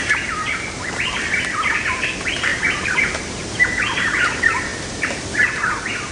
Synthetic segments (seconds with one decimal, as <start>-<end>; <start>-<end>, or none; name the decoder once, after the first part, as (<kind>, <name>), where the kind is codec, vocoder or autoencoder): 2.5-4.2 (vocoder, BigVGAN v2)